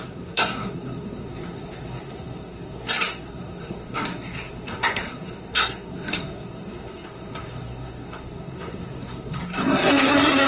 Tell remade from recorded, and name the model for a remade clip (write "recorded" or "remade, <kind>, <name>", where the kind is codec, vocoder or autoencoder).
remade, codec, SNAC